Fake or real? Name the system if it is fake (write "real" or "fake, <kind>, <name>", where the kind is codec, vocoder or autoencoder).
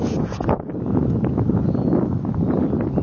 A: real